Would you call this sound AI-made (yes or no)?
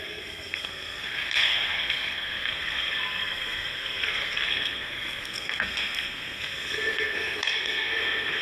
yes